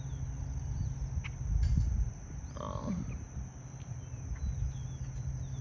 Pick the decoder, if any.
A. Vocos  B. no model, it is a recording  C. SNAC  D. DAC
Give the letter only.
B